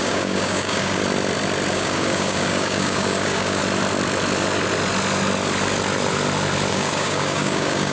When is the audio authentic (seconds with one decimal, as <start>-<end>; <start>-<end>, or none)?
1.0-1.7; 3.6-6.7